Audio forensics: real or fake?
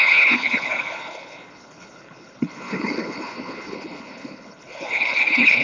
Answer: fake